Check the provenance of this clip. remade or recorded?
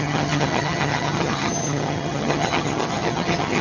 remade